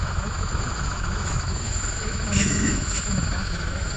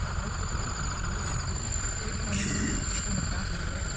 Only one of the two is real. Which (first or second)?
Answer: second